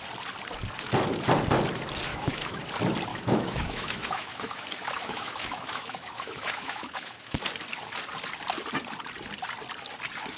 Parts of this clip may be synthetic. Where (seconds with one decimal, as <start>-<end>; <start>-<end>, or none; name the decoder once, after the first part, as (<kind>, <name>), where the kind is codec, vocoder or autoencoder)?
2.1-2.6 (autoencoder, DAC-VAE); 3.1-7.4